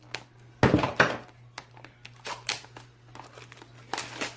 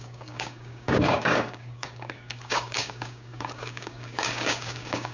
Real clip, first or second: first